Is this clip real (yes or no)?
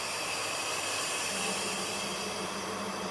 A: yes